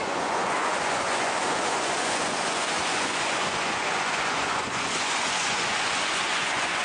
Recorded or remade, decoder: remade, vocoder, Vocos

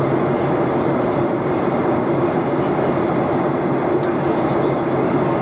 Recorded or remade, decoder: recorded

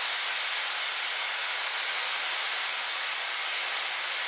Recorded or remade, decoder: recorded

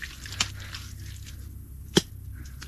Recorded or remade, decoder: recorded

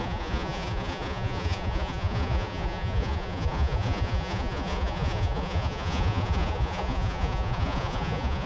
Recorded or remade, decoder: remade, vocoder, Vocos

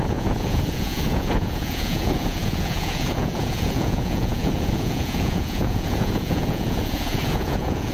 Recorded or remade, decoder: remade, vocoder, Vocos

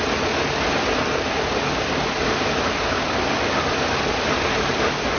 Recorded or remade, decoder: recorded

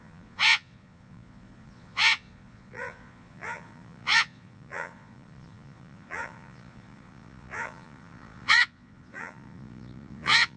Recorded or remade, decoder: remade, vocoder, Vocos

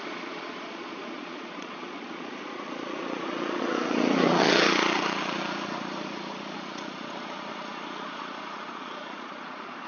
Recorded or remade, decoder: remade, vocoder, Vocos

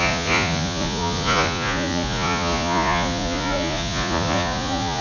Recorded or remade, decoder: remade, vocoder, Vocos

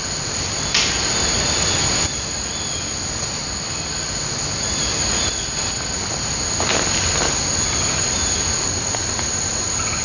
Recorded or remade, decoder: recorded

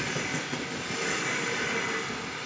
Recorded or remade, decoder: recorded